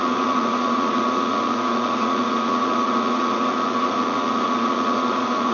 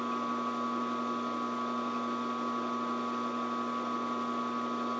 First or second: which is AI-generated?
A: first